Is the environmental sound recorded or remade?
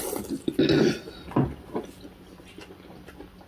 recorded